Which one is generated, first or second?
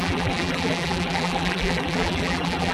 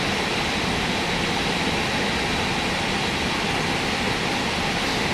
first